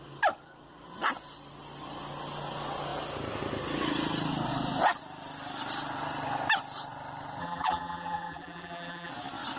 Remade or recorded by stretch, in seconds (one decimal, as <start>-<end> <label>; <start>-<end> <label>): 0.0-7.4 recorded; 7.4-9.1 remade; 9.1-9.6 recorded